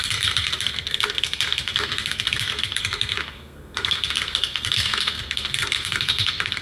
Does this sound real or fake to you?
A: fake